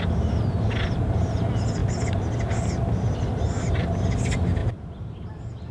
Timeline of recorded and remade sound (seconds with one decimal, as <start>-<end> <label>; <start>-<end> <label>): 0.0-5.7 recorded